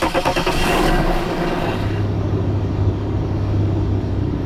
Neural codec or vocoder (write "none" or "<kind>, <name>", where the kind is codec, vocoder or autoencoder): codec, DAC